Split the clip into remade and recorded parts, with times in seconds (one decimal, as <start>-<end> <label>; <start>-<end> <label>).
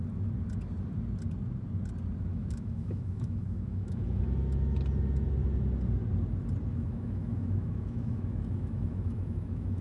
0.0-2.3 recorded; 2.3-4.2 remade; 4.2-6.7 recorded; 6.7-9.8 remade